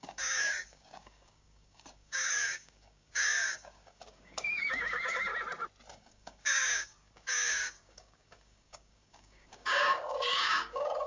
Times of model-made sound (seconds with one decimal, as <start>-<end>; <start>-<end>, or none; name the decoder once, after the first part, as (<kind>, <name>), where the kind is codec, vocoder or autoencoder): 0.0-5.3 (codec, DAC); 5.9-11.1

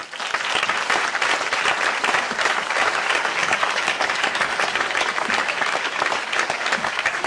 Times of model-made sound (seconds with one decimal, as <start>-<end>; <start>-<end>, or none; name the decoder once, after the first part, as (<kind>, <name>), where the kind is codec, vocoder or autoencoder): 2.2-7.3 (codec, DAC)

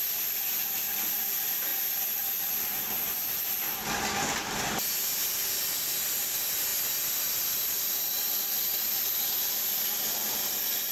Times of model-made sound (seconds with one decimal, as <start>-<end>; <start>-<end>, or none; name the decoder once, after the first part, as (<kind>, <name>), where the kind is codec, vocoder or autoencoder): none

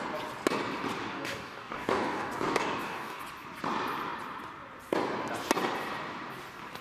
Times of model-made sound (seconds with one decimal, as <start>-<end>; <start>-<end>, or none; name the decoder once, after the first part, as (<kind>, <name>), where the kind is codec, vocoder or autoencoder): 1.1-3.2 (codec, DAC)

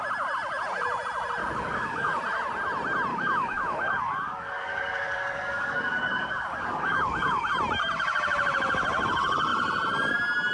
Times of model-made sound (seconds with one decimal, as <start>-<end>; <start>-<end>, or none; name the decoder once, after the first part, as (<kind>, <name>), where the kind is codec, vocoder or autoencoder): 1.4-2.2 (codec, DAC); 3.1-7.5

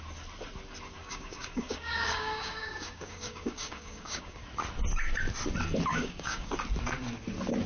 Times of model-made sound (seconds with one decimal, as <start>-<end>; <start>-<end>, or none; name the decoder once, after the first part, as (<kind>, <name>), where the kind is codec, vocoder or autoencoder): 1.0-4.4 (codec, DAC); 5.9-6.5